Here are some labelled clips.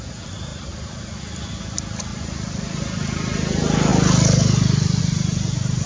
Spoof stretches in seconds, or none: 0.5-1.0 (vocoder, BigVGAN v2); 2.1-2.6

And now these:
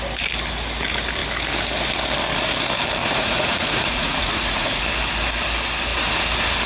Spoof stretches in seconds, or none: 3.0-4.8 (vocoder, Vocos)

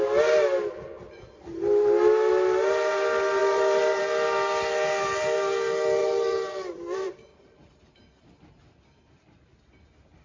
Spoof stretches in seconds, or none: 3.4-4.0 (vocoder, BigVGAN v2); 6.0-8.0

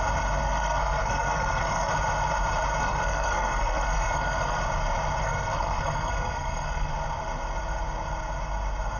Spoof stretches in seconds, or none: 0.4-1.9 (codec, SNAC); 2.8-4.6; 5.2-6.9

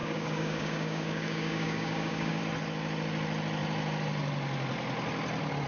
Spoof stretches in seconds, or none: 0.0-2.4 (codec, DAC)